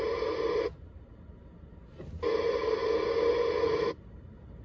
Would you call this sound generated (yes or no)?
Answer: no